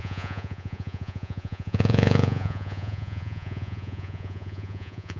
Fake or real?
fake